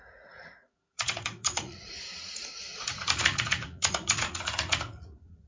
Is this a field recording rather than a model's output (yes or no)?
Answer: no